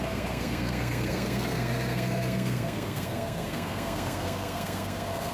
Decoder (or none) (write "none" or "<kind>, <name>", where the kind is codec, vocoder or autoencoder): codec, SNAC